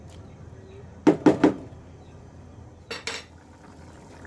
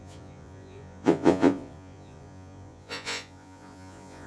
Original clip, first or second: first